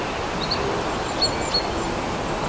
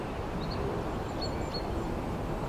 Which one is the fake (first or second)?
second